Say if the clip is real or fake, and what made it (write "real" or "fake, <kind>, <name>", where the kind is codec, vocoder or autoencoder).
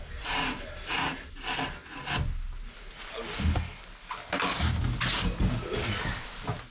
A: real